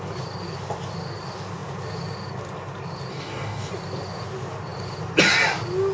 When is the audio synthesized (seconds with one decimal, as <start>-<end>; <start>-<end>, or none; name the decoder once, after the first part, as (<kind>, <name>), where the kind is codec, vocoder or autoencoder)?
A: 3.1-3.7 (codec, DAC)